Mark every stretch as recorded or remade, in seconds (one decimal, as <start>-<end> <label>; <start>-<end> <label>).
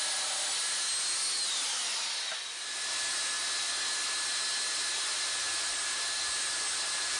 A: 0.0-7.2 recorded